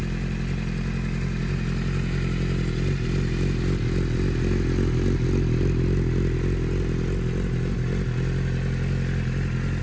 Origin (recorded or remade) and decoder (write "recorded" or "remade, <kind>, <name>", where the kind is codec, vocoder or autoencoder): recorded